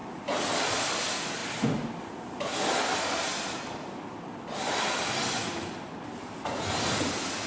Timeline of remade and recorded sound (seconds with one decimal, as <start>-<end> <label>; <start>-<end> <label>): 0.0-7.5 recorded